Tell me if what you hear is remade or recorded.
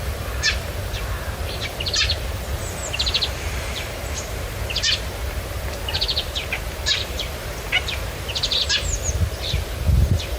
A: remade